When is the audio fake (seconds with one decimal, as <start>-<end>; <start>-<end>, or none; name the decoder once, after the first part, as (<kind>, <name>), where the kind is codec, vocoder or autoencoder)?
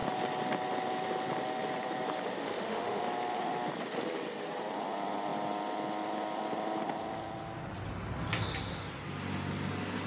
2.4-3.0 (autoencoder, DAC-VAE)